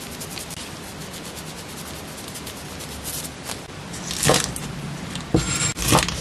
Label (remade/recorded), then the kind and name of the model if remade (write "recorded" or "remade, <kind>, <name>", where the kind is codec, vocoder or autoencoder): recorded